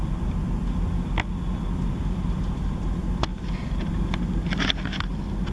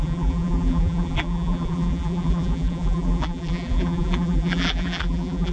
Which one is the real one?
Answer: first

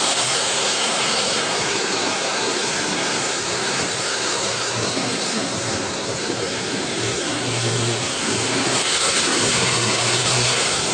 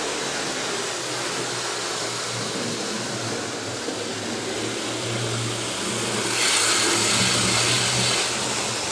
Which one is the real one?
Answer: second